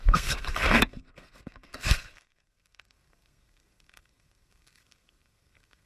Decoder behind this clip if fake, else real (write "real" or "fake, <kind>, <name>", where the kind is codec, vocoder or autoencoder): fake, codec, SNAC